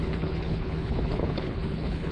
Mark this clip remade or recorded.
remade